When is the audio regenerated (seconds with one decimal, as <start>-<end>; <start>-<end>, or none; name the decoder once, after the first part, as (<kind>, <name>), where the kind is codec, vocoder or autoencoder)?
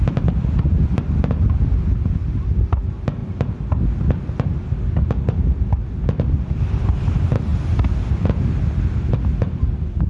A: none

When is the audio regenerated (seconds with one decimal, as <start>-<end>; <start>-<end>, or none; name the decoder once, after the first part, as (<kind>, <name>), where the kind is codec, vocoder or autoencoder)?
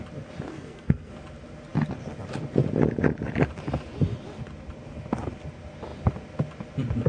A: 0.5-1.1 (codec, SNAC)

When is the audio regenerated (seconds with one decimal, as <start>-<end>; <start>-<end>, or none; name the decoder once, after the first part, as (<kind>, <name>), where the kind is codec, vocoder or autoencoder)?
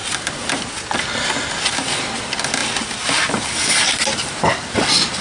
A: none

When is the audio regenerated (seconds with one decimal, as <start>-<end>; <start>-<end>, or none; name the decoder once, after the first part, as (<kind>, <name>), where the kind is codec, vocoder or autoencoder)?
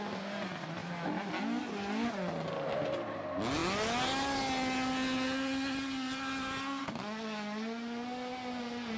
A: none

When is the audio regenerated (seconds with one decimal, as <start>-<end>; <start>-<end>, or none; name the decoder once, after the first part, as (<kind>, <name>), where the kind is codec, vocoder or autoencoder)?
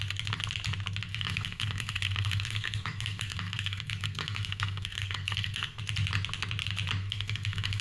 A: 1.1-5.8 (codec, SNAC); 7.0-7.8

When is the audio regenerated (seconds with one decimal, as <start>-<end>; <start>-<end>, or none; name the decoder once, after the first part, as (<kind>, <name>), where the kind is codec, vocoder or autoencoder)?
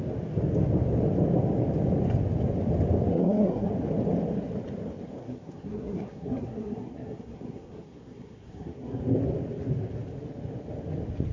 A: 3.1-3.7 (codec, SNAC); 5.2-9.0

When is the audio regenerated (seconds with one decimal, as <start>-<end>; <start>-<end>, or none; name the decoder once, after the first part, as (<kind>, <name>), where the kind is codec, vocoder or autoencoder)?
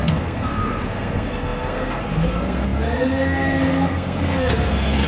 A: 0.0-5.1 (codec, SNAC)